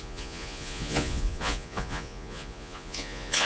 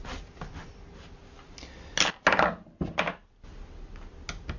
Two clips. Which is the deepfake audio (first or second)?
first